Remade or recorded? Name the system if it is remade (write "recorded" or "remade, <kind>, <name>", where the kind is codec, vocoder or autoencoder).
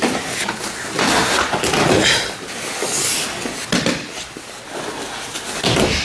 recorded